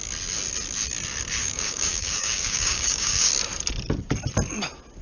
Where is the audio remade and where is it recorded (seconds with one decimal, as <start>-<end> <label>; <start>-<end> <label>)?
0.0-1.4 recorded; 1.4-3.3 remade; 3.3-5.0 recorded